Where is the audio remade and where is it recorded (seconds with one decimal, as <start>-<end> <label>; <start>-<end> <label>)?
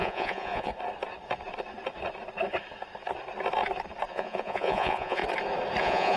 0.0-0.7 remade; 0.7-4.1 recorded; 4.1-5.2 remade; 5.2-5.8 recorded; 5.8-6.2 remade